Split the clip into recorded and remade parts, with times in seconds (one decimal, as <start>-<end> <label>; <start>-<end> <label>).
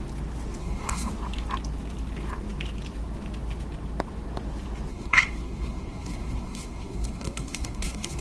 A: 0.0-0.6 recorded; 0.6-1.1 remade; 1.1-4.9 recorded; 4.9-8.2 remade